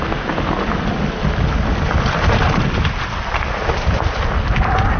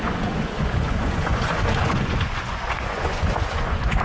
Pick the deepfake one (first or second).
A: second